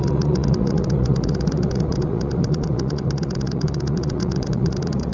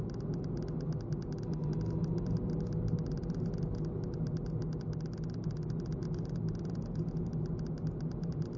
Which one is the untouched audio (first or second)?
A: second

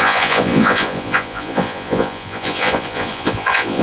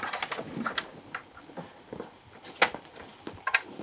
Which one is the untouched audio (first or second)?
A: second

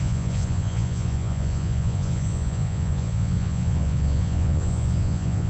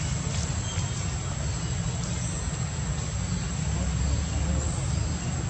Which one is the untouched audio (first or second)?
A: second